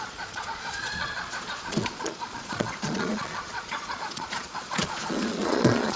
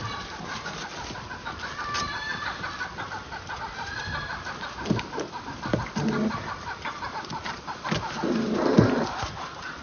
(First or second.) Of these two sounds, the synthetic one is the first